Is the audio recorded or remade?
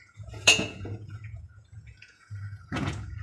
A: remade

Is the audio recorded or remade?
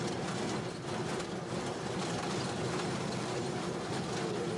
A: recorded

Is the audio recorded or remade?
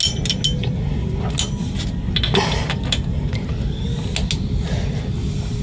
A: recorded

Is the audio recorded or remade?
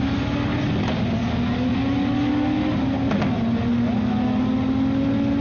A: recorded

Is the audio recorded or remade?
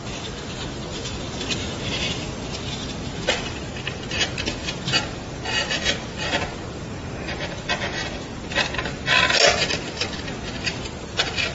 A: recorded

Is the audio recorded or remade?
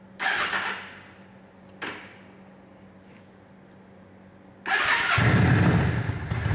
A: recorded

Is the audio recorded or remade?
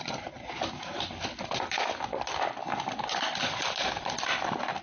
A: recorded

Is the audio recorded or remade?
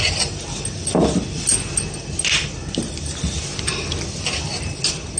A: recorded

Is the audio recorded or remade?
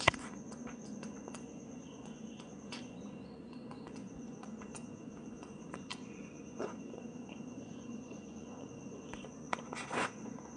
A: remade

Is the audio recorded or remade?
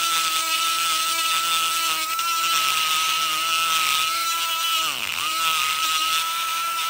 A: recorded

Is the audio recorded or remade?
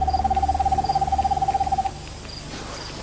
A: recorded